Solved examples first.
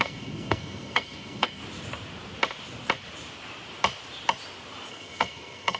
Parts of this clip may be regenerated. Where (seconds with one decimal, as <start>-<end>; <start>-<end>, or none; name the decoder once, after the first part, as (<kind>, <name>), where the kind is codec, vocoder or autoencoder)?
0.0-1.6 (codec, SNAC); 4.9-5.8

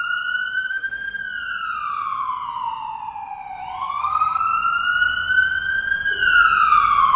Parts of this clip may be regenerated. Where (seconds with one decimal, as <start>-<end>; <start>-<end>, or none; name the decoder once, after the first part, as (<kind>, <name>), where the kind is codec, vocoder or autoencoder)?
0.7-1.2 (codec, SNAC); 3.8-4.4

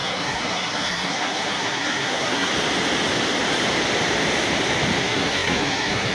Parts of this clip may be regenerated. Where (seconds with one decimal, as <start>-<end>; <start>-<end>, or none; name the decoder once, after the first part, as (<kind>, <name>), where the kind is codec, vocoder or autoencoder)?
0.0-2.5 (codec, SNAC); 5.0-6.1

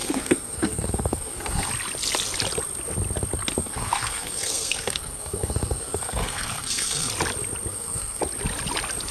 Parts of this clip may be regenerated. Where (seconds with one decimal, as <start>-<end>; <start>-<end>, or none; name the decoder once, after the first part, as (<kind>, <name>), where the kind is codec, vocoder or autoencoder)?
0.0-1.7 (codec, SNAC); 3.6-7.1; 7.7-8.2

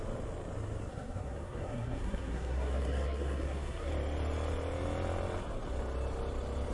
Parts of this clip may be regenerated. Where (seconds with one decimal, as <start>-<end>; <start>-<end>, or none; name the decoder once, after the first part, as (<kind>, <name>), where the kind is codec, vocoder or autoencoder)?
0.9-3.9 (codec, SNAC)